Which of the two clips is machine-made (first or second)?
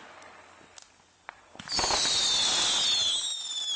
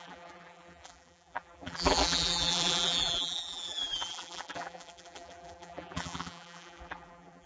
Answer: second